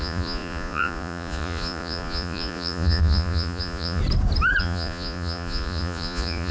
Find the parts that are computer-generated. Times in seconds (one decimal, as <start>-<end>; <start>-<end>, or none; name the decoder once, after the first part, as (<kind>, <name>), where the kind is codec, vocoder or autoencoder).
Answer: 0.0-4.0 (vocoder, Vocos); 4.6-6.5